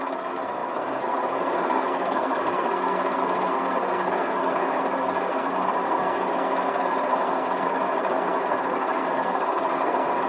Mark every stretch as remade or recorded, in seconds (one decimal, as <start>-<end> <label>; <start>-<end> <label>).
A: 0.0-10.3 remade